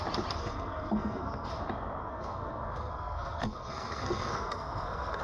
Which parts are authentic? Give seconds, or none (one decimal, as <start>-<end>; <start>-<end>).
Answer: 0.0-0.4; 1.5-2.0